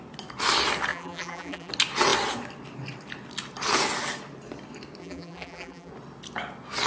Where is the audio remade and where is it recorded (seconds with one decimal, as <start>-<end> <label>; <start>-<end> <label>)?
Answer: 0.0-0.9 recorded; 0.9-1.7 remade; 1.7-5.0 recorded; 5.0-5.9 remade; 5.9-6.9 recorded